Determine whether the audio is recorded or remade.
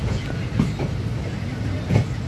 recorded